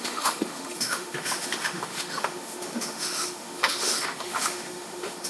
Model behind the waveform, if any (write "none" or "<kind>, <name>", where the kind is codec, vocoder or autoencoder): autoencoder, DAC-VAE